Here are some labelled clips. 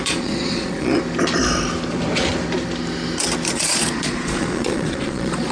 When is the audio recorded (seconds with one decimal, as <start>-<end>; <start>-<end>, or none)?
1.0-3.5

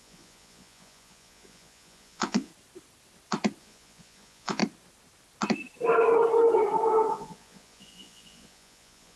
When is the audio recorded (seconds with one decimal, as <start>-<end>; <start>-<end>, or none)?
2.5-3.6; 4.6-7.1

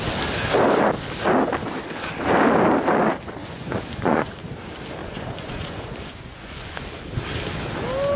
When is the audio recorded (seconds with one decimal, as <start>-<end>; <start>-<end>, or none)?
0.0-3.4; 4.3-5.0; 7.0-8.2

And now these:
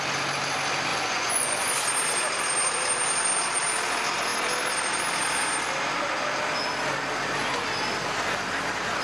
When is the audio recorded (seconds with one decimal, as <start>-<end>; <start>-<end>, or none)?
0.0-0.9; 1.7-9.0

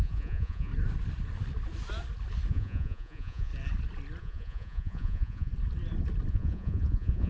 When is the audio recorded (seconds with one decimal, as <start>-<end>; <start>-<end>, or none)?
0.7-2.5; 3.5-4.2; 5.5-6.3

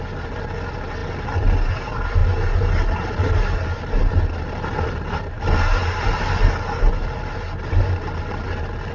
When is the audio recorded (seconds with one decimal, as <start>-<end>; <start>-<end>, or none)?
0.0-8.9

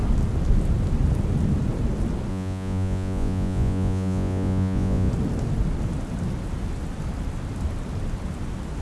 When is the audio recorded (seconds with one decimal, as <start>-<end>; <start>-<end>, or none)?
0.0-2.3; 5.1-8.8